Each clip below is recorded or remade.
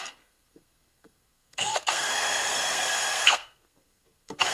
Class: remade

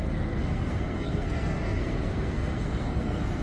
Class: remade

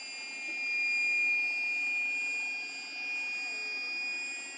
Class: recorded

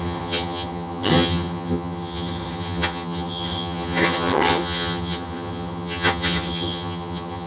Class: remade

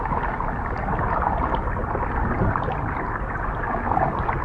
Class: recorded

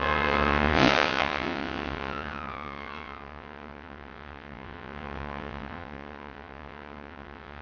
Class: remade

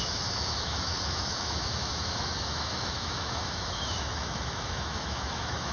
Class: remade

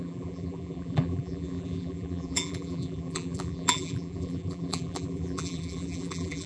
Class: remade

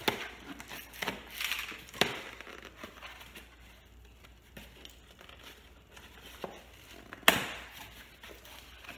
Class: recorded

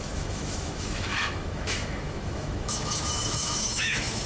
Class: remade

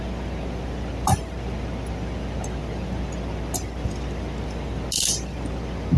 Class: recorded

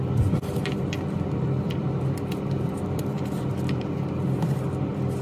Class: remade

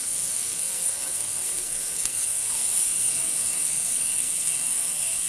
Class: remade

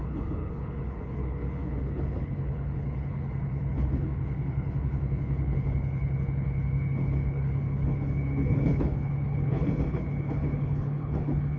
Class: remade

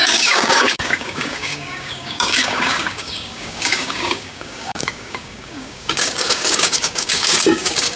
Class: remade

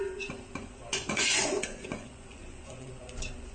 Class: remade